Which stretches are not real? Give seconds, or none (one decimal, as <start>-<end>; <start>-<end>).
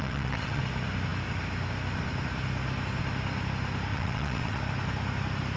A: 0.0-0.6; 3.9-4.6